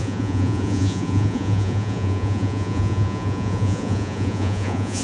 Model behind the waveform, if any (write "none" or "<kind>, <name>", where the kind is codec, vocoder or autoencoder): vocoder, Vocos